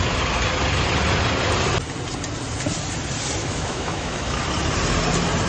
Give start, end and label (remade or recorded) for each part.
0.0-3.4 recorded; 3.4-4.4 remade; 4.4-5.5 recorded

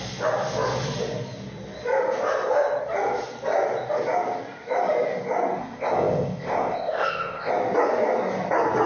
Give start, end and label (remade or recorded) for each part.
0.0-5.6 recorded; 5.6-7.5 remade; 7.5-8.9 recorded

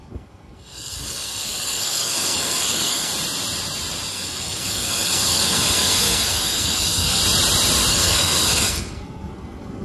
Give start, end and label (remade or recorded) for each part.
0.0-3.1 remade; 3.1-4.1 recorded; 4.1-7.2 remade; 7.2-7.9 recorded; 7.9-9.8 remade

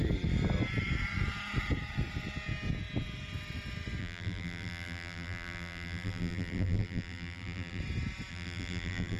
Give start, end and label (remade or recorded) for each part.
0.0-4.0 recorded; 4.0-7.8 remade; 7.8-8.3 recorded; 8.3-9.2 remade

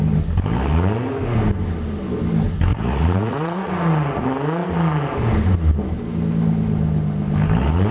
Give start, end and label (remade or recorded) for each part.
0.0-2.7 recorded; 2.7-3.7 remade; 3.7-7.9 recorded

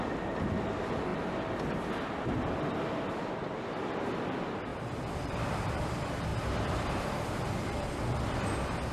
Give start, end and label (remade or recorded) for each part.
0.0-4.7 recorded; 4.7-5.8 remade; 5.8-6.3 recorded; 6.3-8.5 remade; 8.5-8.9 recorded

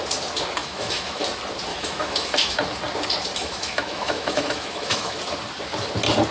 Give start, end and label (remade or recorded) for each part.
0.0-0.6 recorded; 0.6-1.2 remade; 1.2-1.7 recorded; 1.7-2.6 remade; 2.6-3.4 recorded; 3.4-5.2 remade; 5.2-6.3 recorded

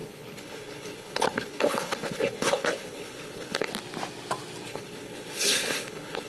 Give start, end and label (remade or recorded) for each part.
0.0-3.7 remade; 3.7-4.7 recorded; 4.7-6.3 remade